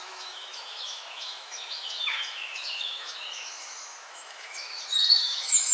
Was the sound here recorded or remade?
remade